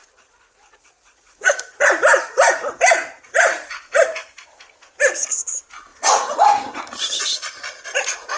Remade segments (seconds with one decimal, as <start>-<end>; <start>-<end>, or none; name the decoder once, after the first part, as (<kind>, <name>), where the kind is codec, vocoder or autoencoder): 0.0-1.9 (vocoder, Vocos); 5.9-6.8